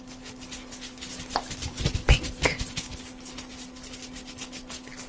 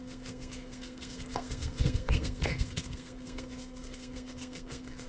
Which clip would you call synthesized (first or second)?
second